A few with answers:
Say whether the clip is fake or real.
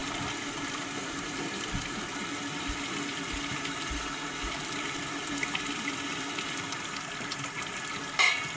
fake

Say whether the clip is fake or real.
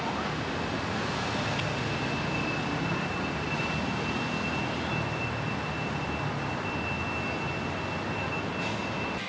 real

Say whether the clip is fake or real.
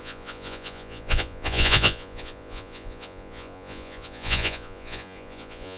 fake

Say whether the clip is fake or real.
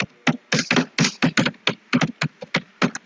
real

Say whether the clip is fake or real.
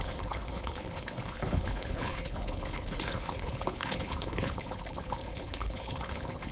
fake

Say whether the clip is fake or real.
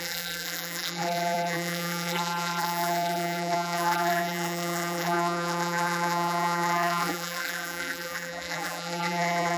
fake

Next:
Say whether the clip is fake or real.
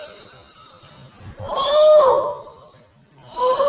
fake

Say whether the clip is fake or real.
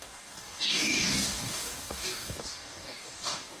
fake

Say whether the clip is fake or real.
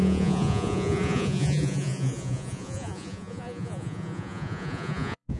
fake